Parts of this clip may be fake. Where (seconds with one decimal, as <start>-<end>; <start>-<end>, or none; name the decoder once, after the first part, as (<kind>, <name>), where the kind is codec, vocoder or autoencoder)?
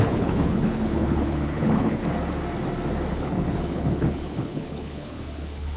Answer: 0.0-2.0 (codec, HILCodec); 3.1-5.8